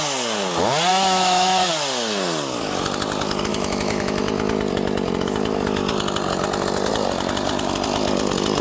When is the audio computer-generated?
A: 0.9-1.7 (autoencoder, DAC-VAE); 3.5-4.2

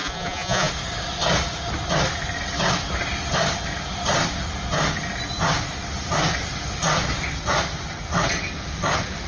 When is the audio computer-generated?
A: 0.0-0.7 (vocoder, Vocos)

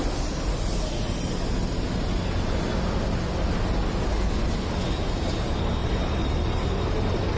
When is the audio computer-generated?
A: 5.8-7.4 (vocoder, BigVGAN v2)

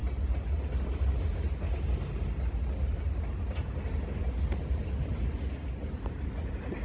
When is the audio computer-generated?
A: none